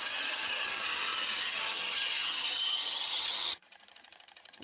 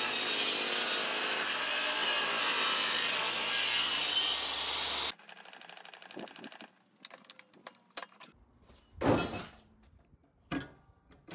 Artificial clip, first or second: first